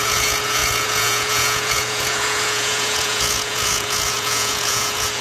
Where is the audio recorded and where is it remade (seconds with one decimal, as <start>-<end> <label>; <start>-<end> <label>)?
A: 0.0-5.2 remade